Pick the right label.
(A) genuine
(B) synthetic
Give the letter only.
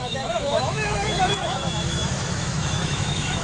B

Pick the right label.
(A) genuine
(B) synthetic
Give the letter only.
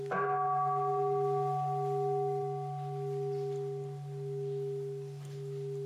A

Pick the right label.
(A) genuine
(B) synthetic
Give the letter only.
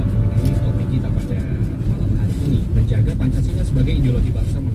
A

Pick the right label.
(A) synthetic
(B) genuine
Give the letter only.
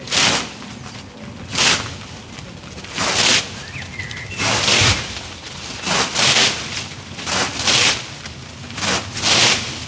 B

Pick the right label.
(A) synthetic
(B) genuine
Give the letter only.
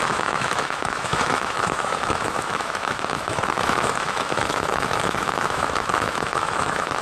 A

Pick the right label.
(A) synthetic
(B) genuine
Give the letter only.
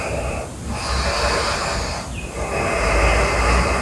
B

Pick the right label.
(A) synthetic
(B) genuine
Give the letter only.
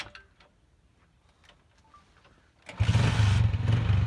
B